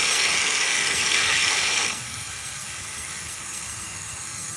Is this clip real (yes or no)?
no